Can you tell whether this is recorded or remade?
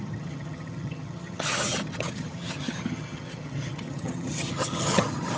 remade